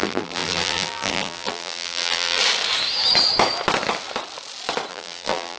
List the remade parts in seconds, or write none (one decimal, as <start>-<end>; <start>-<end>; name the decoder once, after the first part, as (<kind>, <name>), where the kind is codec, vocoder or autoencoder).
0.0-2.4 (vocoder, BigVGAN v2); 4.9-5.6